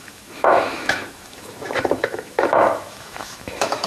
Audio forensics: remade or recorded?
remade